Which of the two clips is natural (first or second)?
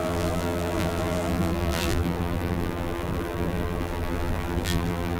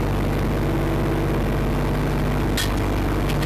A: second